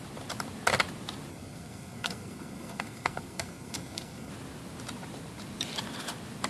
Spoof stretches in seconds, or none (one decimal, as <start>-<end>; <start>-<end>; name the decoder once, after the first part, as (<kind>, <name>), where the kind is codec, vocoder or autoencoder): 1.3-4.3 (codec, SNAC)